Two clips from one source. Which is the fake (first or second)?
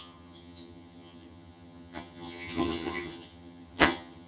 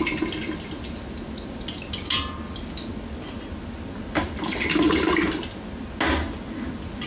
first